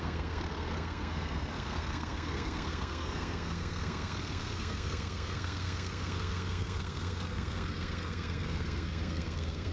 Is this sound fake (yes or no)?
yes